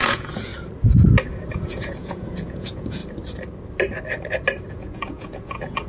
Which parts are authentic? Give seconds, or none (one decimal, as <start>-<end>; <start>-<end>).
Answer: 0.5-1.5; 3.0-4.7